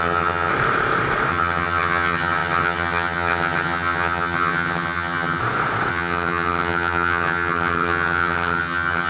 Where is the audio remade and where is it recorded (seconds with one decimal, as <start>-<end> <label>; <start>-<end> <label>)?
0.0-0.5 remade; 0.5-1.3 recorded; 1.3-5.4 remade; 5.4-5.9 recorded; 5.9-9.1 remade